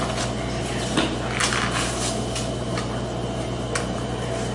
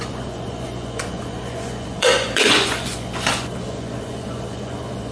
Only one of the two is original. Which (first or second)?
first